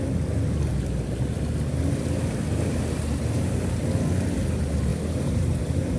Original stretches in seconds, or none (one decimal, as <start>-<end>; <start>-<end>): 0.0-4.9; 5.6-6.0